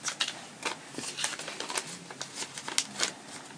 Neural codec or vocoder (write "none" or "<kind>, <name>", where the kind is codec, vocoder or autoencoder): none